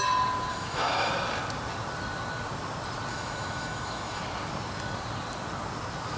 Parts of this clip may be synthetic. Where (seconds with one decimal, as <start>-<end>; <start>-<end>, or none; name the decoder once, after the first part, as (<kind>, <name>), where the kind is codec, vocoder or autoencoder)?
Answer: 0.5-1.1 (autoencoder, DAC-VAE); 3.1-4.2